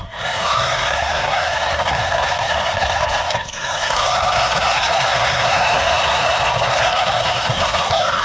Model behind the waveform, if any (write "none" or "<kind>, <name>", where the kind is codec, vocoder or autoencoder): codec, SNAC